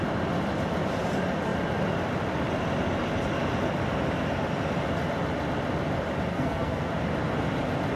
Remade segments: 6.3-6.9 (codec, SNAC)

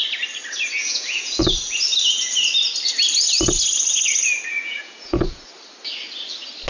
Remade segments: 0.8-1.4 (vocoder, Vocos); 4.5-5.4

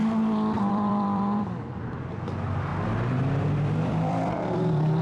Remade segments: 0.0-2.7 (vocoder, BigVGAN v2); 3.5-5.0

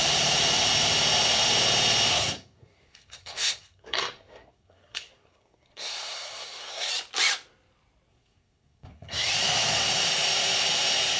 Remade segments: 2.1-6.9 (codec, SNAC); 8.1-9.3